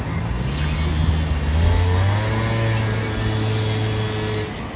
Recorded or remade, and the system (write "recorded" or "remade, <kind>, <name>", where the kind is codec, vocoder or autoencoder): recorded